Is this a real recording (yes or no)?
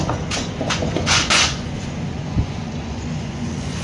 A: no